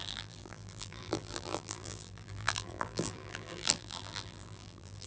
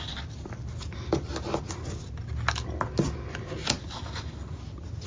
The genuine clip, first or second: second